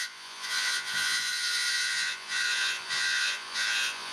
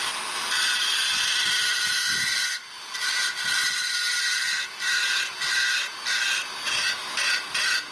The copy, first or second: first